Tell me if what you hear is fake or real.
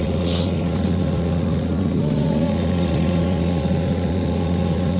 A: fake